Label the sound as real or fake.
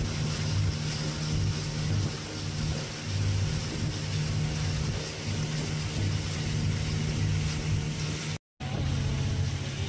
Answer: real